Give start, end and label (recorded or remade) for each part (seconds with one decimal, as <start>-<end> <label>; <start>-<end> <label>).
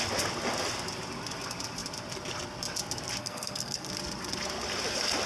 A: 0.0-3.2 recorded; 3.2-3.9 remade; 3.9-5.3 recorded